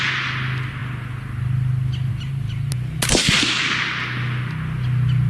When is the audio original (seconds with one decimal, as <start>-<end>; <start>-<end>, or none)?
0.0-5.3